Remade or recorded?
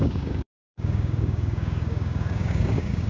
remade